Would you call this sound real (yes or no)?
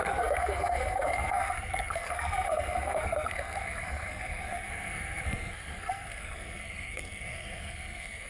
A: no